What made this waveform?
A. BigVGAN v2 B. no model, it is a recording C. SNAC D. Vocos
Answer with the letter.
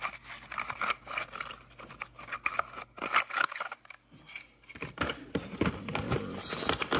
B